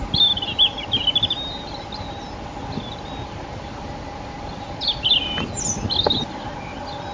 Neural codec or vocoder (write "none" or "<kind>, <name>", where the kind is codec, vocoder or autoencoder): none